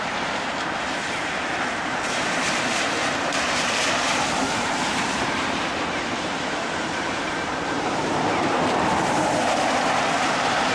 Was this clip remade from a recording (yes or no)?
yes